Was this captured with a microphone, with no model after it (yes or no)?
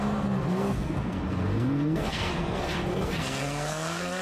no